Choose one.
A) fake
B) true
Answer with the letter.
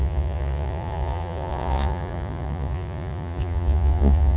A